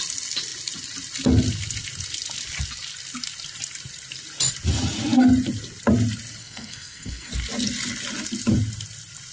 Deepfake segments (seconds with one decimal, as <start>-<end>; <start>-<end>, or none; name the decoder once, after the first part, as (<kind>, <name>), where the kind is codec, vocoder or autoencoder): 6.4-7.3 (codec, SNAC)